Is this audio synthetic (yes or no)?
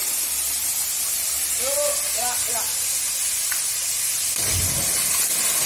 no